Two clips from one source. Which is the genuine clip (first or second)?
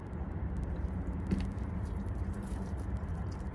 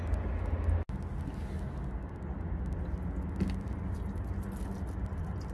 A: second